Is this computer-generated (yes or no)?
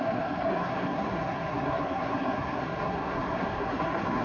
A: yes